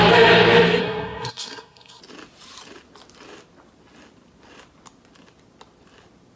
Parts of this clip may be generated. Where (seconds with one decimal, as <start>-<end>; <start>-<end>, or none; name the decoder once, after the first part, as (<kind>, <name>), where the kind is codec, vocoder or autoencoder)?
0.8-2.0 (codec, SNAC)

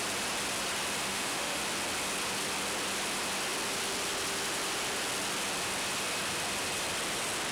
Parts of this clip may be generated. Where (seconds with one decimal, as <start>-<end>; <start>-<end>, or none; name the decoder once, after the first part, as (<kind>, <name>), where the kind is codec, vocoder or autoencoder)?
1.1-1.6 (autoencoder, DAC-VAE)

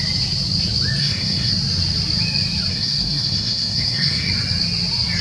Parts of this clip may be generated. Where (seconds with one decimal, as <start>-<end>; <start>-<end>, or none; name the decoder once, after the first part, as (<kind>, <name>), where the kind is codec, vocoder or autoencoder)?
1.0-1.5 (codec, SNAC); 2.7-4.3

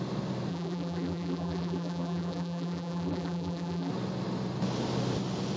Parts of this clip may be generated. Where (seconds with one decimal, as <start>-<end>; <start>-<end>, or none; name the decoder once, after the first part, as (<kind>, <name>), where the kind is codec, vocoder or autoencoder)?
0.5-3.9 (vocoder, BigVGAN v2)

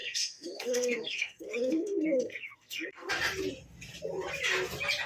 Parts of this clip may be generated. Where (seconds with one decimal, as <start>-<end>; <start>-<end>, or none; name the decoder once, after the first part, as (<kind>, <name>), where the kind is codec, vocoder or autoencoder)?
0.0-3.1 (codec, SNAC)

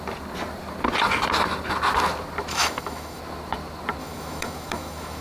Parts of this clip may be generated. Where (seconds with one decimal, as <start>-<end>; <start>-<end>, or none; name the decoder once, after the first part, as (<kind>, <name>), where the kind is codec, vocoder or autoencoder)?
2.5-3.2 (autoencoder, DAC-VAE); 4.0-5.2

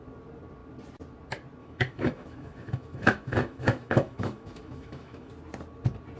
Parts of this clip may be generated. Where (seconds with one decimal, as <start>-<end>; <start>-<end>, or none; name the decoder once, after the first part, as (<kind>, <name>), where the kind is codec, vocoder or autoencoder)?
1.6-5.3 (autoencoder, DAC-VAE)

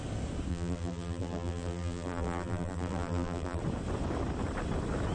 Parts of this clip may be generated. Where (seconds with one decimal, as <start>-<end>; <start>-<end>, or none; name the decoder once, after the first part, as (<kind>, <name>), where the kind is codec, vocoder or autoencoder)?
0.5-3.6 (vocoder, BigVGAN v2)